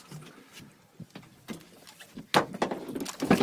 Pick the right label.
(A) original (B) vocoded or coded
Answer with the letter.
A